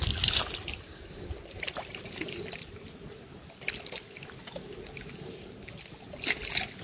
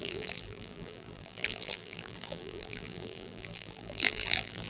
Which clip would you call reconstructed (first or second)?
second